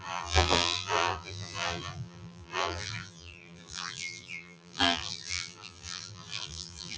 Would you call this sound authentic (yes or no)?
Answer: no